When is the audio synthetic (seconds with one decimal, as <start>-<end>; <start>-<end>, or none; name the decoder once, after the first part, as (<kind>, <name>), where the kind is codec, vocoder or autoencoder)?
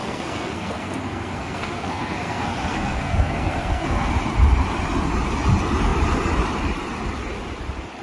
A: 0.0-4.1 (codec, SNAC)